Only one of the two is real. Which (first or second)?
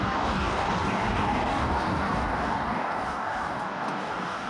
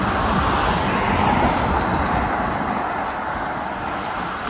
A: second